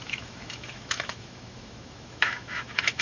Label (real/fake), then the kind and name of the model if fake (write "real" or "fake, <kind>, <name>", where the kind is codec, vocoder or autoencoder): fake, autoencoder, DAC-VAE